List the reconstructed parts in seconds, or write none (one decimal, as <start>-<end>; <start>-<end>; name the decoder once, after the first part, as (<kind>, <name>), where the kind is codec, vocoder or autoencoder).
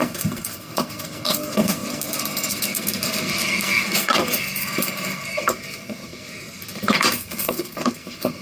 0.0-8.4 (codec, SNAC)